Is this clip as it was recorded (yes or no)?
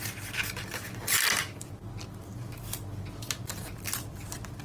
yes